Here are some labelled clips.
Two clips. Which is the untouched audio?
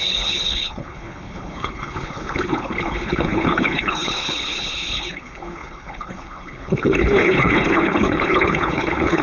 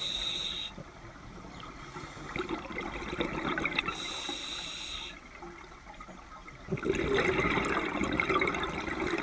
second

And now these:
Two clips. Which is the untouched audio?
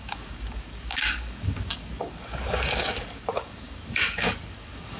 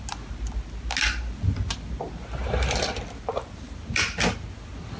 second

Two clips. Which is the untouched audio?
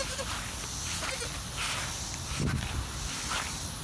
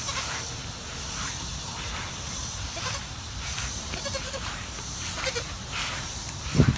first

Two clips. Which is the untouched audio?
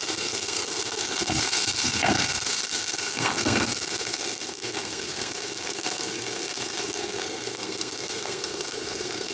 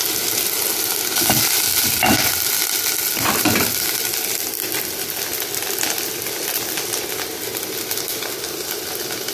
second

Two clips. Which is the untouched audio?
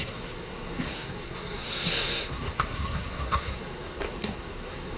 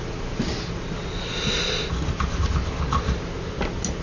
second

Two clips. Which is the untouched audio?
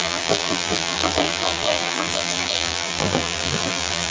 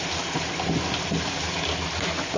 second